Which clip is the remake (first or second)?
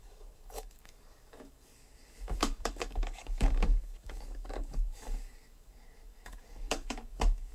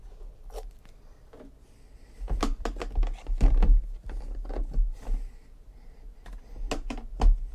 first